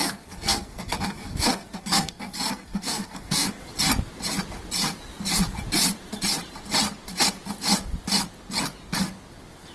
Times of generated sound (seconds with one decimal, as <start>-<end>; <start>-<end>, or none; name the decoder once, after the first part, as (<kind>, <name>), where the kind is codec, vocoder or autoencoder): 0.0-3.5 (codec, SNAC)